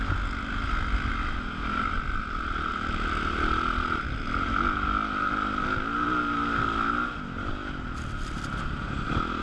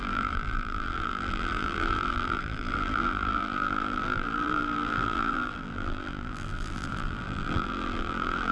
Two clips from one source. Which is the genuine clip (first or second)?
first